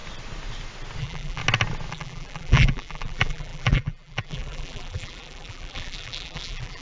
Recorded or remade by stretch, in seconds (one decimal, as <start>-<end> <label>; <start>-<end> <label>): 0.0-1.0 recorded; 1.0-1.4 remade; 1.4-1.9 recorded; 1.9-6.8 remade